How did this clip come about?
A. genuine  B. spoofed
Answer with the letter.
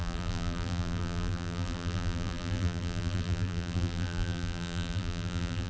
B